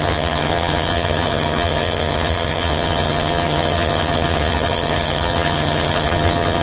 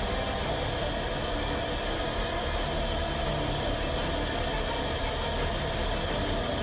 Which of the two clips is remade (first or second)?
first